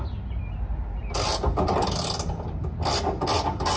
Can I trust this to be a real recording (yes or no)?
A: yes